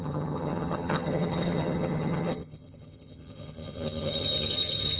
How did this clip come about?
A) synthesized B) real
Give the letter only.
A